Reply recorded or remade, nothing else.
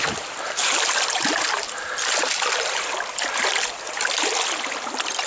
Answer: recorded